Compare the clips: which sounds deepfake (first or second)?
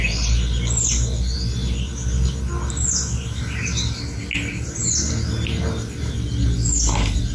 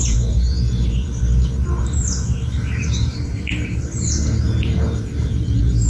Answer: second